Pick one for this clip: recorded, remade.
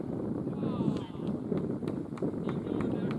recorded